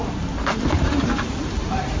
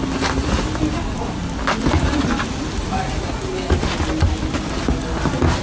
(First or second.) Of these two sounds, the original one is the second